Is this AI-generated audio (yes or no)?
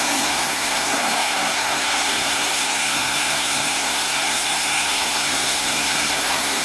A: yes